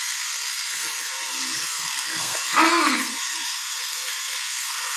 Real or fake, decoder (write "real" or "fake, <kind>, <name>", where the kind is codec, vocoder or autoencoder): fake, codec, SNAC